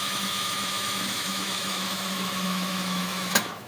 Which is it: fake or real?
fake